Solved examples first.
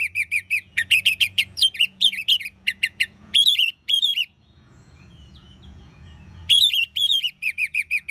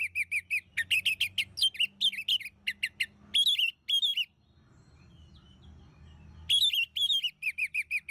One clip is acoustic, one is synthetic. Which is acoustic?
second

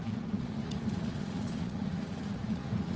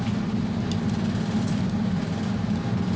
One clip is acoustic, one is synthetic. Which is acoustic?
second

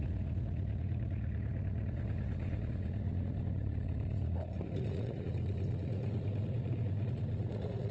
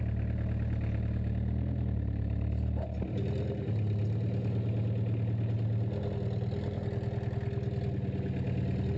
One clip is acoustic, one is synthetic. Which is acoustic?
second